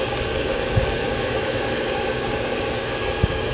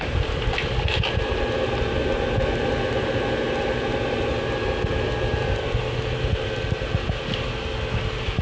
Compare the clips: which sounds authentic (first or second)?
second